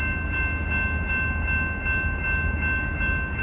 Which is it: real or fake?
real